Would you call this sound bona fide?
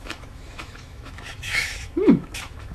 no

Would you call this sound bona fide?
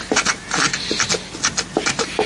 yes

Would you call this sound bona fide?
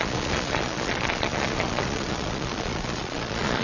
no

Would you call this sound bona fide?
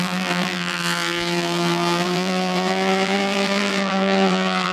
no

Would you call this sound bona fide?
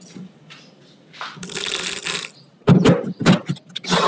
yes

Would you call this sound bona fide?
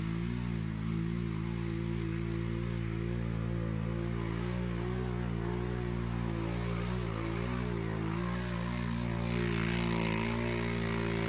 yes